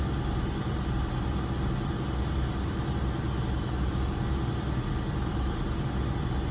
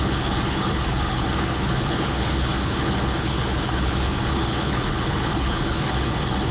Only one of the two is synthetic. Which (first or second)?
second